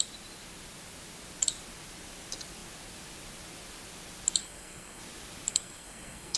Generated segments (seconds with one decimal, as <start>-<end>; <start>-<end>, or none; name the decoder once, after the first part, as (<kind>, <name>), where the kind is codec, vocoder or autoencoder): 4.4-5.0 (codec, SNAC); 5.5-6.4

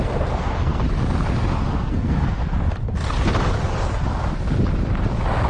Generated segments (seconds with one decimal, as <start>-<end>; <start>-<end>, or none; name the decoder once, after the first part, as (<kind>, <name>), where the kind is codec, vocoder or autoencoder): 0.0-0.8 (codec, SNAC); 1.6-2.4